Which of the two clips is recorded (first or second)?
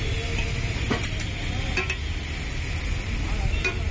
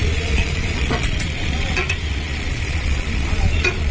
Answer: first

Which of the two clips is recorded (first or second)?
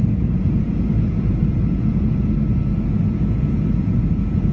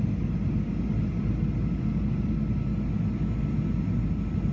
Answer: second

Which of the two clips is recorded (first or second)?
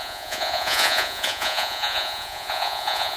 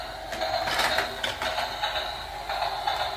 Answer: second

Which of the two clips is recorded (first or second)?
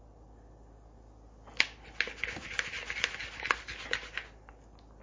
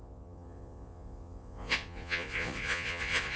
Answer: first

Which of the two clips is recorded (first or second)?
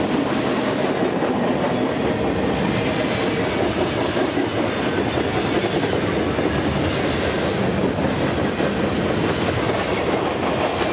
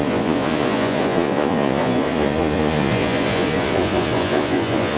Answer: first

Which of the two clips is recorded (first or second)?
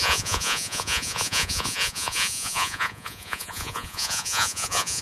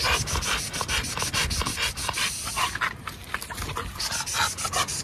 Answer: second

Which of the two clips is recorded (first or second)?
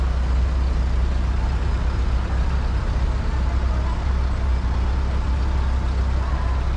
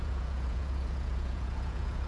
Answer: first